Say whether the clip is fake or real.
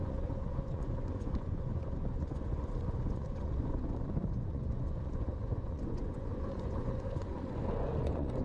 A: fake